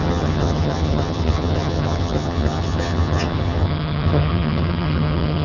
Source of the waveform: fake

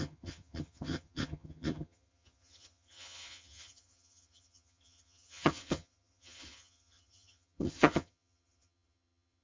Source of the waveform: fake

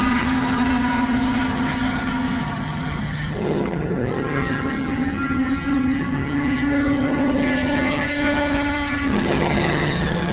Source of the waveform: fake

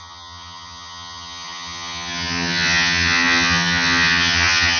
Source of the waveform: fake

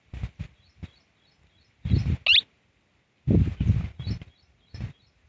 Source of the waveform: real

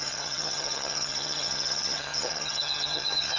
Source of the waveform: fake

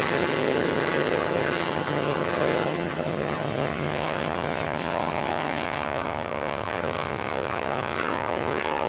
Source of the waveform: fake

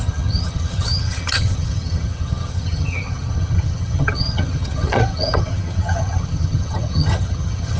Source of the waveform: fake